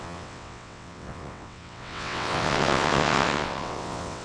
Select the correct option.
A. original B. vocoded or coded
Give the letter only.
B